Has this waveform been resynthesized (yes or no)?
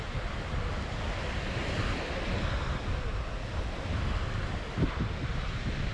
no